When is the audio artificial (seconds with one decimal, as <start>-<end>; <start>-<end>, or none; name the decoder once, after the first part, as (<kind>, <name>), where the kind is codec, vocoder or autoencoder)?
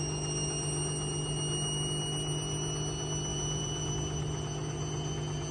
3.3-3.9 (vocoder, Vocos)